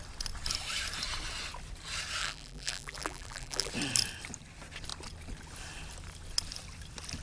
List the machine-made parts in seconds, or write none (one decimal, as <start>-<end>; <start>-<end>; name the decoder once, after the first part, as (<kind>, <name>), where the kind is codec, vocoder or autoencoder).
2.2-3.7 (vocoder, BigVGAN v2)